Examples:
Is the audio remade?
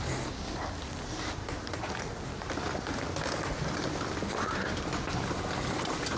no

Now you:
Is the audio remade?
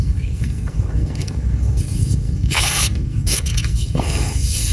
yes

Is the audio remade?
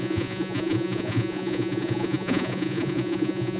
yes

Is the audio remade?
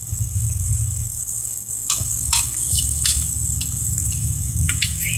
yes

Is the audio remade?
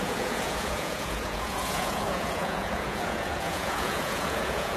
yes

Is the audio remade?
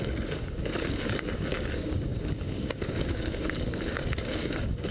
yes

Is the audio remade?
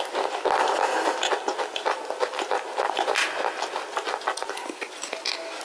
no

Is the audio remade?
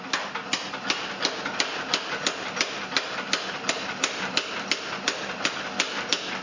no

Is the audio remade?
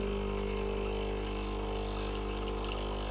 no